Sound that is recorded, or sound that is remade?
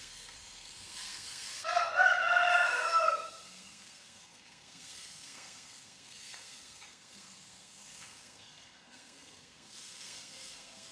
remade